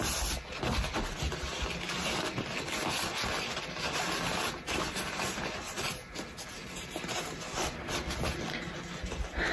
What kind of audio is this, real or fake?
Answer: real